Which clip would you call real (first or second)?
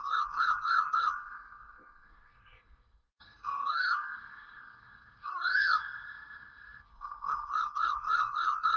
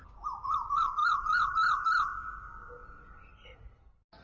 second